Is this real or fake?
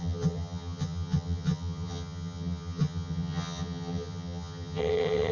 fake